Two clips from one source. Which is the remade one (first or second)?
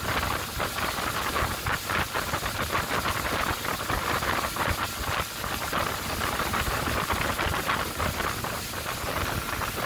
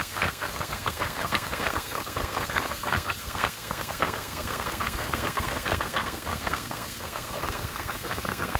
second